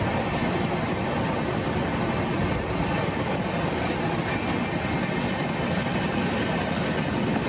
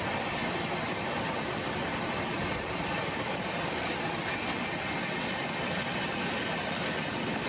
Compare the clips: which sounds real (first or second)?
first